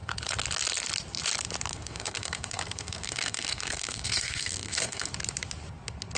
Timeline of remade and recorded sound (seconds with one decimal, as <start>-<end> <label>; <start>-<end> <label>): 0.0-1.7 recorded; 1.7-5.1 remade; 5.1-6.2 recorded